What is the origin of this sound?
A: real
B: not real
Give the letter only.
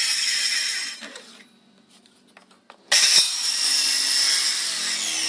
A